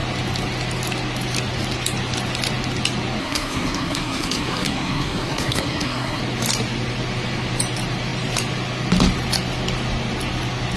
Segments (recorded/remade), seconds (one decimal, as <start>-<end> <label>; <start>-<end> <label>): 0.0-3.2 recorded; 3.2-6.2 remade; 6.2-10.8 recorded